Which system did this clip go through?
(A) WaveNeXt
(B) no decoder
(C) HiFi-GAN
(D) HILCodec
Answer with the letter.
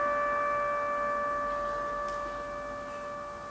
B